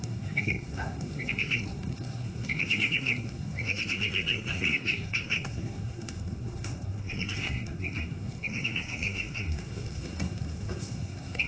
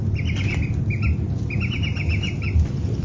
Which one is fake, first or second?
first